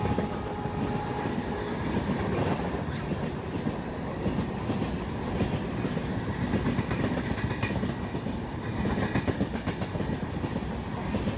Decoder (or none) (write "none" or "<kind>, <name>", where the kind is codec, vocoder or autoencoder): none